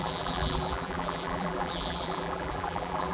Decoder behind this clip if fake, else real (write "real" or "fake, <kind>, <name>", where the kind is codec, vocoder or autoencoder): fake, vocoder, BigVGAN v2